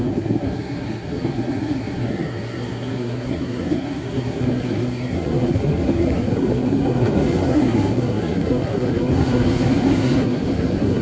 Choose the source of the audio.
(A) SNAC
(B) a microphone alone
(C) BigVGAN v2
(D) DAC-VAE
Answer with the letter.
A